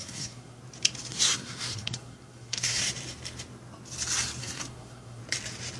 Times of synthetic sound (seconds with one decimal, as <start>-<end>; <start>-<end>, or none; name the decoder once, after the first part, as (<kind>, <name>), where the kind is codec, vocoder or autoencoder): 0.0-0.6 (codec, SNAC); 1.1-2.8; 4.4-5.2